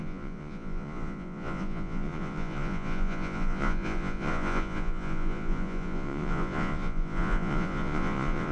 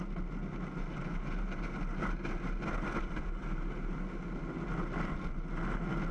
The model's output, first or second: first